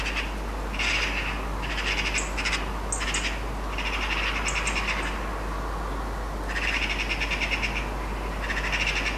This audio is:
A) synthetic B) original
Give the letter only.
B